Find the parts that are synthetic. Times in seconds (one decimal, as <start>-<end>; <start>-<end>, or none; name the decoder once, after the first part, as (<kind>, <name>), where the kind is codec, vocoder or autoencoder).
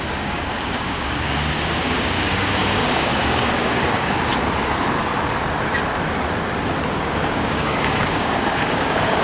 0.0-4.3 (codec, DAC); 6.9-9.2